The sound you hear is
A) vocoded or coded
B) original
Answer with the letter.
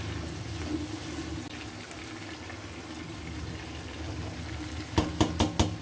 B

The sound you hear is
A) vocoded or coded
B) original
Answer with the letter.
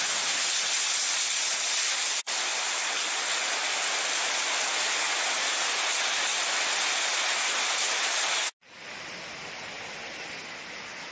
B